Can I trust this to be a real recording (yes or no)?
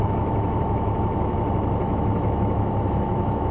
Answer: no